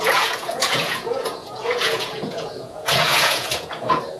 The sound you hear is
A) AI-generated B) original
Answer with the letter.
A